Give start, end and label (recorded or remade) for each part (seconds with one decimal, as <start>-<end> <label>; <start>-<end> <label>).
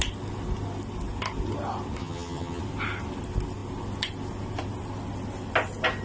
0.0-2.0 recorded; 2.0-2.6 remade; 2.6-6.0 recorded